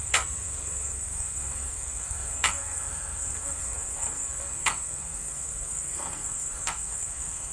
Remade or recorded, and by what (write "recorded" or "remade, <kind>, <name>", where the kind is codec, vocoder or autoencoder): remade, codec, SNAC